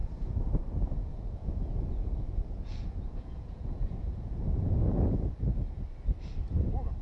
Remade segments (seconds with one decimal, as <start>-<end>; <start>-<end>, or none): 0.0-0.6; 1.1-5.3